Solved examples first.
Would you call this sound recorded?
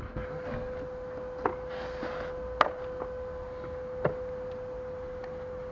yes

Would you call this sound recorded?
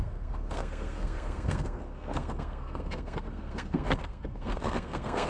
no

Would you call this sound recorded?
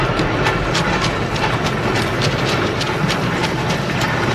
yes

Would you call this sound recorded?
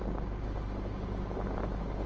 yes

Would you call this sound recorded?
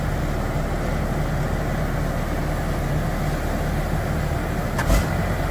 yes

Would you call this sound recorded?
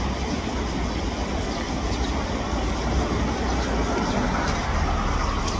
yes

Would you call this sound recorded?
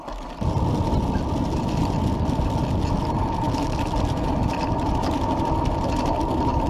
yes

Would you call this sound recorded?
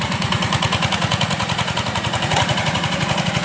no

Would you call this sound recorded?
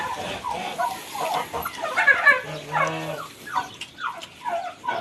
yes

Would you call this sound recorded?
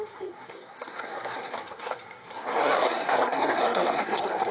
no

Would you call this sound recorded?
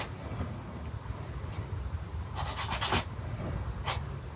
yes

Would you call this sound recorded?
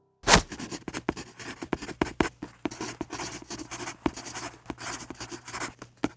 yes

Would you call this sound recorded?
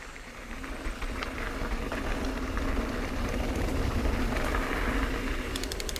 yes